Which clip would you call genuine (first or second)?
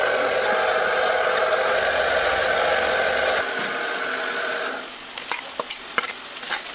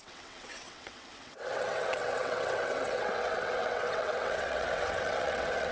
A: first